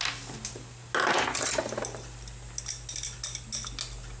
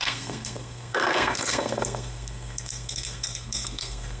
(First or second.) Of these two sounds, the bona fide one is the first